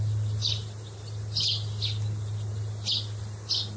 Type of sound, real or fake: real